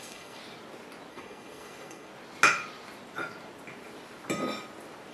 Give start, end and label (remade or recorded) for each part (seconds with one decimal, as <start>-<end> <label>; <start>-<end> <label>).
0.0-0.4 remade; 0.4-1.1 recorded; 1.1-2.1 remade; 2.1-5.1 recorded